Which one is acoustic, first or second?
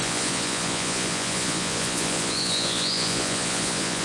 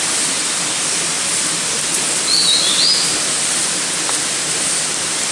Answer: second